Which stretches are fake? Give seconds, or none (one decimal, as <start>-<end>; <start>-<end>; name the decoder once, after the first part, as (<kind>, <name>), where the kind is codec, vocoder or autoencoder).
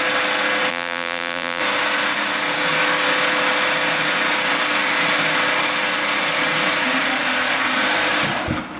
0.7-1.6 (vocoder, BigVGAN v2)